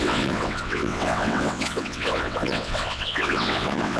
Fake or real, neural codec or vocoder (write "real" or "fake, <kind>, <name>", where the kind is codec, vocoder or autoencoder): fake, vocoder, WaveNeXt